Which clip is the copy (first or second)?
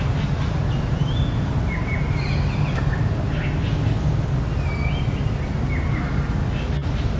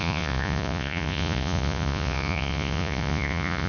second